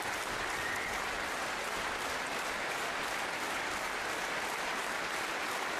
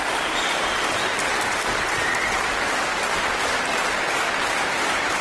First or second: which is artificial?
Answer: second